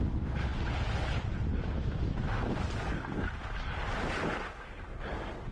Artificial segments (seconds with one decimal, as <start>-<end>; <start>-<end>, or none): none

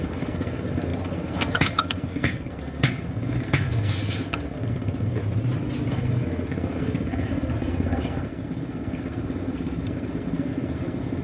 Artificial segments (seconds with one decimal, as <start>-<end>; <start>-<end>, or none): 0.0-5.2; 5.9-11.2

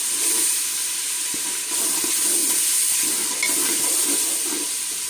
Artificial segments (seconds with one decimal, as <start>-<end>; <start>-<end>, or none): none

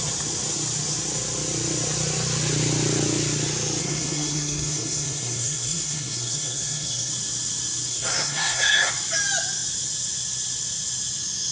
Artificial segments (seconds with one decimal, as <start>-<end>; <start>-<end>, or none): 3.8-7.1; 7.9-8.9

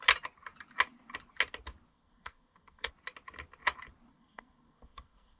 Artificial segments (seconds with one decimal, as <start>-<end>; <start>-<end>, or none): 1.9-2.9; 4.1-5.4

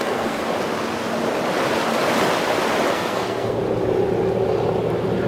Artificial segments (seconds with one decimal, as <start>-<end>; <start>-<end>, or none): 0.0-0.4; 2.9-3.6